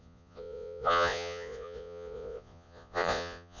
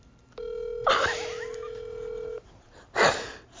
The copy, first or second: first